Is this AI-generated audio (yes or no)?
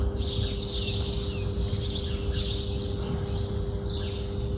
no